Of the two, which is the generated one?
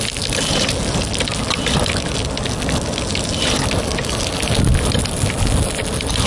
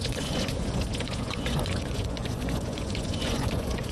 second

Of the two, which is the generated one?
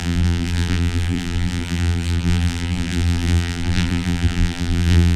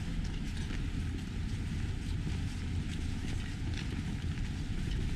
first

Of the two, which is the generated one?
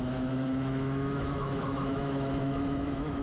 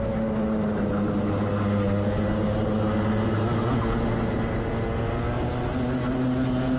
first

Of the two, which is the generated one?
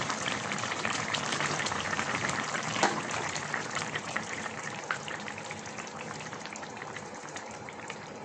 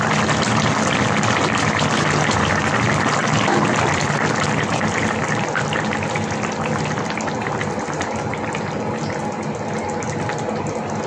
first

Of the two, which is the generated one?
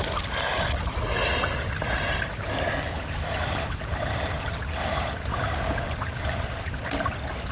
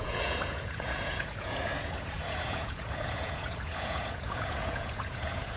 second